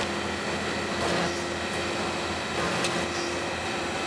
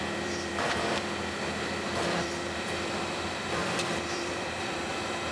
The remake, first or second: second